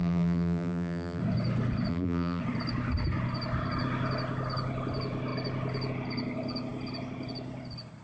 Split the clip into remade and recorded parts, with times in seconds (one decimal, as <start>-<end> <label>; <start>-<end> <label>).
0.0-1.2 remade; 1.2-1.9 recorded; 1.9-2.4 remade; 2.4-8.0 recorded